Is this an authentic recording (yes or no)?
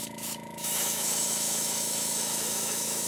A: no